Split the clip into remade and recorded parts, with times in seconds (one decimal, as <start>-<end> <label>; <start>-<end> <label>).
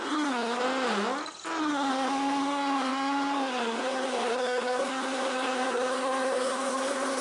0.0-0.6 remade; 0.6-1.6 recorded; 1.6-7.2 remade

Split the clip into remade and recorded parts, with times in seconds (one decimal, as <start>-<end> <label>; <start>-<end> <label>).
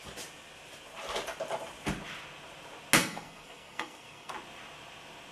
0.0-3.0 recorded; 3.0-4.3 remade; 4.3-5.3 recorded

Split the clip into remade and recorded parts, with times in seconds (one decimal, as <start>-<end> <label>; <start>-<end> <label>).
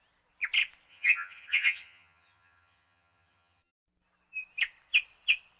0.0-0.9 recorded; 0.9-3.7 remade; 3.7-5.6 recorded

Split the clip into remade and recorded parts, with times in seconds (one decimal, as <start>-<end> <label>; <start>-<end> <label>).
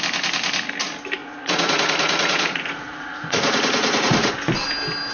0.0-1.2 recorded; 1.2-4.3 remade; 4.3-5.1 recorded